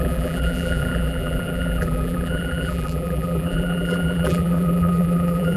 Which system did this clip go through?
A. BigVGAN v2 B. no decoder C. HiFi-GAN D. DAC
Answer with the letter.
A